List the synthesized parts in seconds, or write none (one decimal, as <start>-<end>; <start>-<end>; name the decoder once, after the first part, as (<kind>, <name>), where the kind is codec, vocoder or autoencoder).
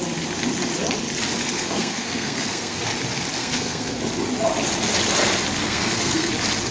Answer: 1.4-2.8 (codec, SNAC); 3.4-4.0; 5.6-6.3